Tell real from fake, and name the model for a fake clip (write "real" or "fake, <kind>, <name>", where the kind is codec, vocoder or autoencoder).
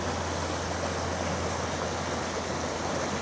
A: real